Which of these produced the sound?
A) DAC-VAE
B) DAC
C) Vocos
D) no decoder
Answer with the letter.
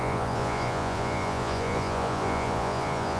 C